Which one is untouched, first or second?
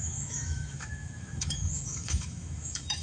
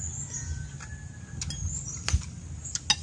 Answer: second